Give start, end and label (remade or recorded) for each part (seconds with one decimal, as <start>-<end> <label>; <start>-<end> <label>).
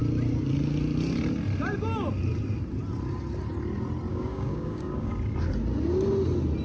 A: 0.0-4.1 recorded; 4.1-5.1 remade; 5.1-6.6 recorded